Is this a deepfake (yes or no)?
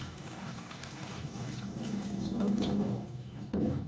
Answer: yes